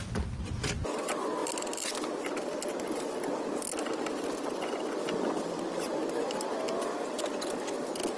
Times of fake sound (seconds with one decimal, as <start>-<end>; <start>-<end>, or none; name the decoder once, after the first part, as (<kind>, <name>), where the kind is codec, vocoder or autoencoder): none